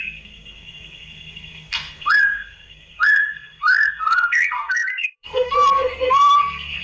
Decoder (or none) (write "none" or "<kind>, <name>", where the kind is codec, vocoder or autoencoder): codec, SNAC